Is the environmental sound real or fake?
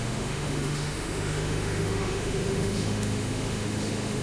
fake